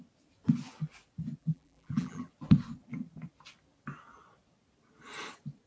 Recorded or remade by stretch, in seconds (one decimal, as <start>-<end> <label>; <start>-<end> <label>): 0.0-1.4 recorded; 1.4-2.3 remade; 2.3-5.7 recorded